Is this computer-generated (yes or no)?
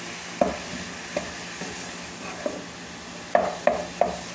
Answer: no